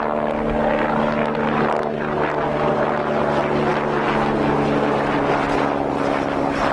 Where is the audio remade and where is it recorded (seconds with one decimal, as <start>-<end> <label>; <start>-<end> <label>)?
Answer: 0.0-6.7 recorded